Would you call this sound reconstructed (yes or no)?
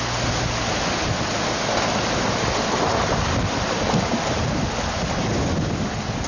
no